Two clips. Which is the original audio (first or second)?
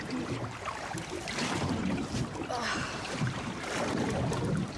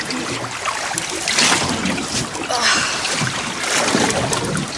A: second